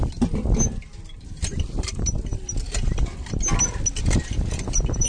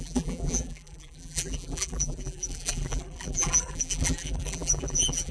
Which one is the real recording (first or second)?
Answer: first